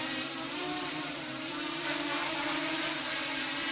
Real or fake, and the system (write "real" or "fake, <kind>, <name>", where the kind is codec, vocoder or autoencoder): fake, vocoder, BigVGAN v2